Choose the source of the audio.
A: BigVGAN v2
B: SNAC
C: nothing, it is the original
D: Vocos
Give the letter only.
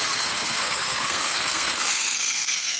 B